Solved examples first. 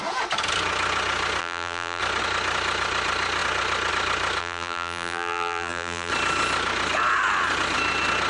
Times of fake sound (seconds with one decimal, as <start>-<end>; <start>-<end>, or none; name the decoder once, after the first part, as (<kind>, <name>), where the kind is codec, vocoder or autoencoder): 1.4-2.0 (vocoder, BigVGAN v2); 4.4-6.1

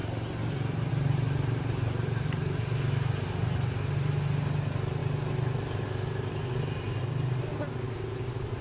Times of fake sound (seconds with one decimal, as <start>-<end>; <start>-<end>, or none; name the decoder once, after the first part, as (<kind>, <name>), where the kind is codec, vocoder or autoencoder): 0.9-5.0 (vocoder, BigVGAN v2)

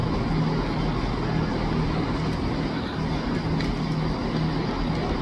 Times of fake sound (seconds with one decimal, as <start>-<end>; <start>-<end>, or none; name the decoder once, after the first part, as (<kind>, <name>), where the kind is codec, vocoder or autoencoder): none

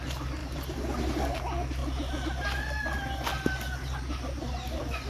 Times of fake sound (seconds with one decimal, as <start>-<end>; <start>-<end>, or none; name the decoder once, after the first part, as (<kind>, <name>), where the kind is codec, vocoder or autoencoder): none